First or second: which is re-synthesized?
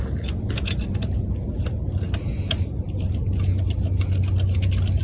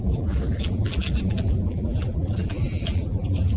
second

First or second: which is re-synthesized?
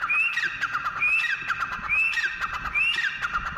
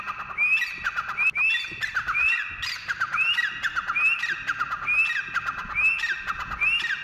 first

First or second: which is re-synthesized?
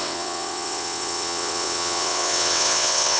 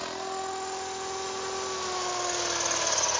first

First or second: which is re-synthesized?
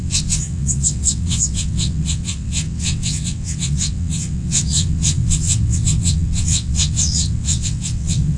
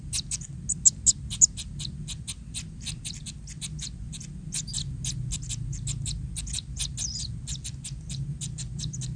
first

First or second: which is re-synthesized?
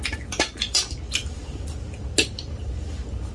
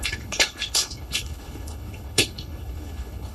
second